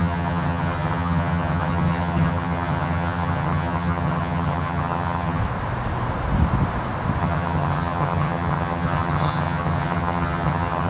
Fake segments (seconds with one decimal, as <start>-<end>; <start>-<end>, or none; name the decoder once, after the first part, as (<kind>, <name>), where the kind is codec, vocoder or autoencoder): 0.0-5.4 (vocoder, HiFi-GAN); 7.2-10.9